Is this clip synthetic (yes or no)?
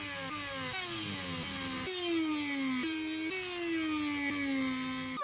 no